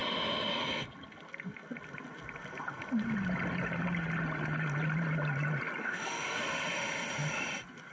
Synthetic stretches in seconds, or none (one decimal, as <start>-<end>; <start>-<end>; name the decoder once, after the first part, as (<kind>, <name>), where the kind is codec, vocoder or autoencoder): 5.8-6.4 (autoencoder, DAC-VAE)